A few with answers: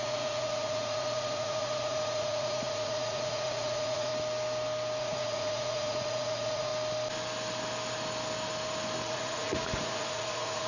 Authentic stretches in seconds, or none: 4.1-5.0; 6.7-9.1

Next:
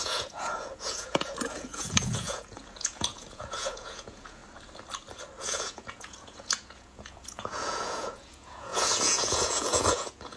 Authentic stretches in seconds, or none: 4.4-5.4

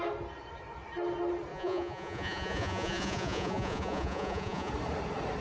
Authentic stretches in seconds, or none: 0.0-1.5; 4.7-5.4

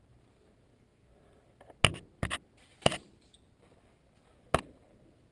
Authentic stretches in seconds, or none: 0.0-5.3